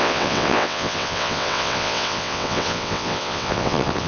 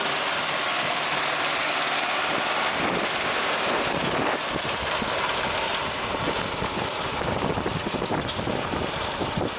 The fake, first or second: first